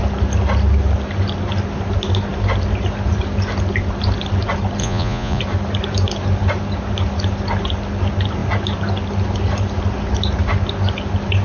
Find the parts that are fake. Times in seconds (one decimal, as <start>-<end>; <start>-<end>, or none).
4.8-5.4